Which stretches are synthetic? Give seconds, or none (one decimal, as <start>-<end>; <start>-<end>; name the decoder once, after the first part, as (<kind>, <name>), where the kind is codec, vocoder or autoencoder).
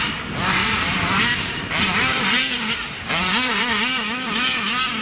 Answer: 0.6-3.6 (vocoder, BigVGAN v2)